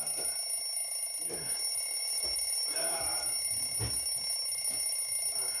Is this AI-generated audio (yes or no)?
no